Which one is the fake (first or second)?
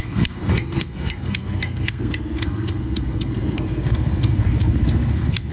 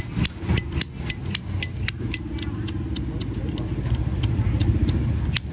first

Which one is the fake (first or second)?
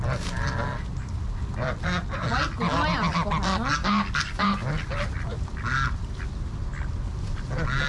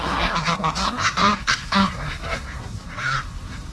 second